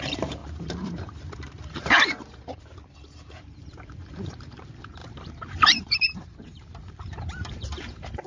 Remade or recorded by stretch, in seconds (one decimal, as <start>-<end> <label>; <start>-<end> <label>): 0.0-8.3 remade